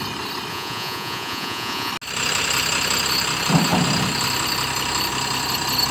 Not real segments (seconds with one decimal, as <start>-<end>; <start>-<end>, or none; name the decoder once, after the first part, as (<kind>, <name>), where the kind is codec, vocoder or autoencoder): 0.5-1.9 (vocoder, Vocos)